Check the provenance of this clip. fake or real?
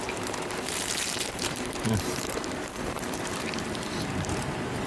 fake